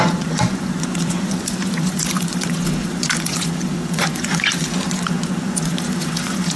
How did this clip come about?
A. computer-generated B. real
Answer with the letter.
A